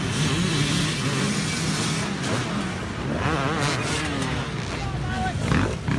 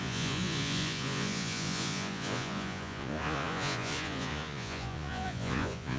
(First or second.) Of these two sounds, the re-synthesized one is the second